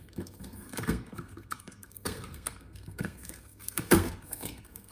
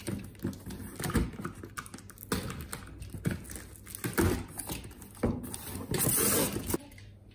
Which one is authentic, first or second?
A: second